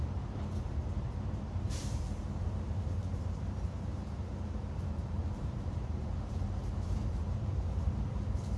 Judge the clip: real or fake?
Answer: fake